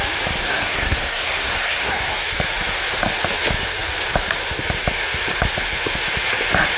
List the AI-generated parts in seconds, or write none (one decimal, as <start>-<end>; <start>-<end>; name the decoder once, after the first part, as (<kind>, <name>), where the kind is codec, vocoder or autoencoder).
0.4-1.9 (codec, SNAC)